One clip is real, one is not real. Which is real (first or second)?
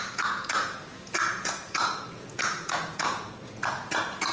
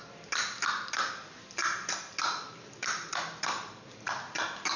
second